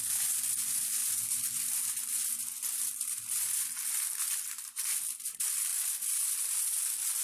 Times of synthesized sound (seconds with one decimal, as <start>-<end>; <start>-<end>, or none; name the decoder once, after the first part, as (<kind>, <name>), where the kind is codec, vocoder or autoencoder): none